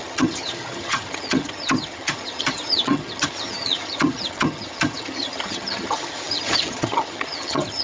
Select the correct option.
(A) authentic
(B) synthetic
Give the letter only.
B